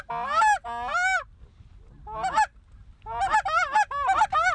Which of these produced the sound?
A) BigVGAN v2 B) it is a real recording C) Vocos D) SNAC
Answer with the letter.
B